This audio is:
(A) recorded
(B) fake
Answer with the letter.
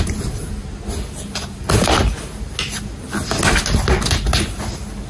A